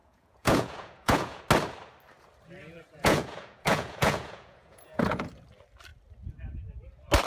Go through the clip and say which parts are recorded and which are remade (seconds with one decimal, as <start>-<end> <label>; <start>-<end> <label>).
0.0-1.4 remade; 1.4-2.6 recorded; 2.6-5.3 remade; 5.3-7.3 recorded